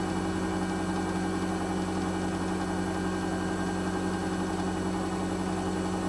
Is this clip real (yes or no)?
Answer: yes